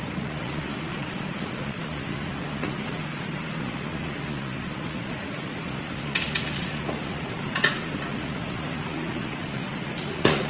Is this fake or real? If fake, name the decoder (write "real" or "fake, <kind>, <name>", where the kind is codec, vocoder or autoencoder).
fake, vocoder, Vocos